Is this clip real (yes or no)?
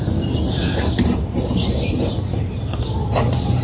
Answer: yes